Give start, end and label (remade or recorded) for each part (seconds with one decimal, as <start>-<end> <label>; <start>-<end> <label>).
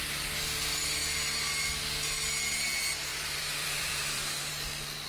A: 0.0-3.1 recorded; 3.1-4.5 remade; 4.5-5.1 recorded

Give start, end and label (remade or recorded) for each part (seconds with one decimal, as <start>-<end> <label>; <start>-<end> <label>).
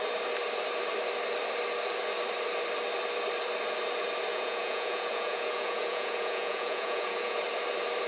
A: 0.0-4.3 recorded; 4.3-7.4 remade; 7.4-8.1 recorded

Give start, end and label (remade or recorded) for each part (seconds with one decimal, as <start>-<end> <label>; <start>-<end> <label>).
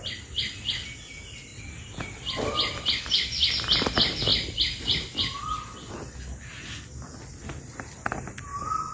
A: 0.0-8.9 recorded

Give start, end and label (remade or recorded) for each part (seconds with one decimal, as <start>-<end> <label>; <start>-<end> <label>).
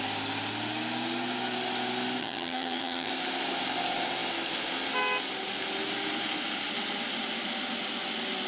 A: 0.0-2.2 recorded; 2.2-3.1 remade; 3.1-8.5 recorded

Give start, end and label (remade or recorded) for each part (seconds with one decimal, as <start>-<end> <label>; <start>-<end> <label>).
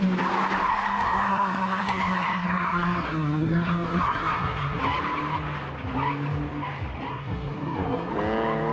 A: 0.0-0.7 recorded; 0.7-4.8 remade; 4.8-7.1 recorded; 7.1-8.1 remade; 8.1-8.7 recorded